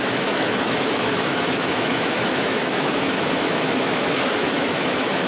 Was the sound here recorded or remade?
remade